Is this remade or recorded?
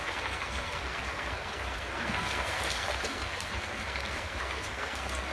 remade